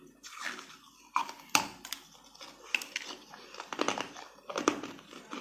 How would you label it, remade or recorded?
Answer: recorded